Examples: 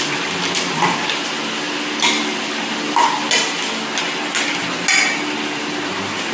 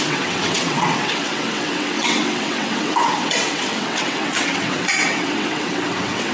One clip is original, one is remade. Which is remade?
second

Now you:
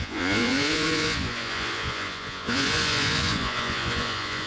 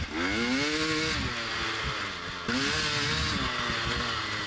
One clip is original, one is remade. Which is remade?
first